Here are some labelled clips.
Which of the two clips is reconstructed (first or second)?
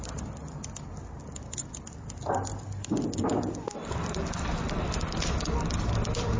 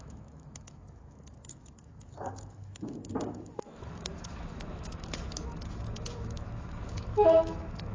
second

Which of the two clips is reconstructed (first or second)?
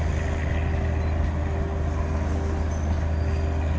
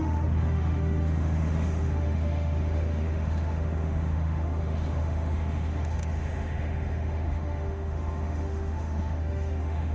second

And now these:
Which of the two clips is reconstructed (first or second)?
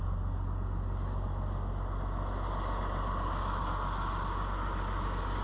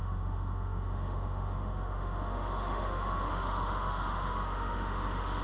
second